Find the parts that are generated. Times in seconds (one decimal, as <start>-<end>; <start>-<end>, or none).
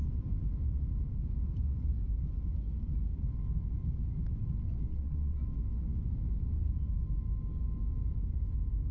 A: 4.9-5.4